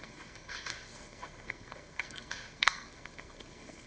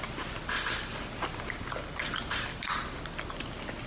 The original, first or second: second